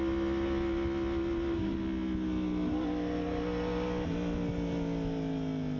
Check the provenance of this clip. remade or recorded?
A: recorded